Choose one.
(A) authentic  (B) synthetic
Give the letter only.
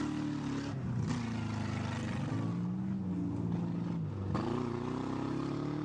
A